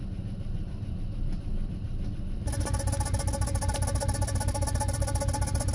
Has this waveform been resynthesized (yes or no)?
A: no